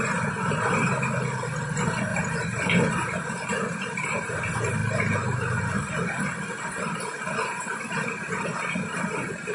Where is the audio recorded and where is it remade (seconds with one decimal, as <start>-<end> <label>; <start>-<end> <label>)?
0.0-9.5 recorded